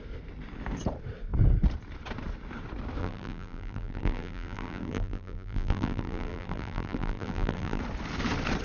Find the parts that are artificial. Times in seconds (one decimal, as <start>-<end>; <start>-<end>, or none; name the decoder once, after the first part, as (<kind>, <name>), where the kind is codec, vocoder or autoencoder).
3.0-7.8 (vocoder, BigVGAN v2)